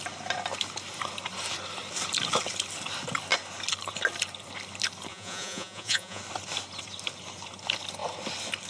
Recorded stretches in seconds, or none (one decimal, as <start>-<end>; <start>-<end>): 0.0-5.1; 6.2-8.7